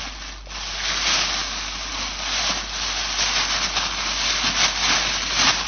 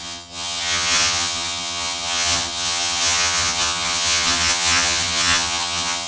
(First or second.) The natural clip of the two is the first